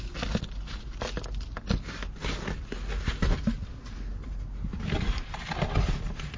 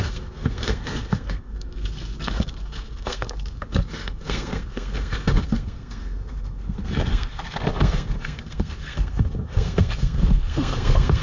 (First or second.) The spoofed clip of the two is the second